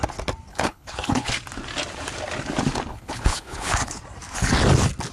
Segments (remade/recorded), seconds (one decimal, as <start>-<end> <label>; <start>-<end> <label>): 0.0-0.5 recorded; 0.5-1.3 remade; 1.3-2.9 recorded; 2.9-4.0 remade; 4.0-5.1 recorded